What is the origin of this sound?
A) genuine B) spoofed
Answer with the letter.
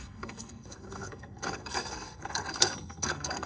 B